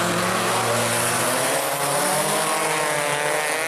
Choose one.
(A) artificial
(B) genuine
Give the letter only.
B